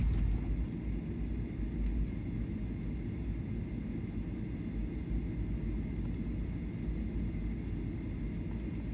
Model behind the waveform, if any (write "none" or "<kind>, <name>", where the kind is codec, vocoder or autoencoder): none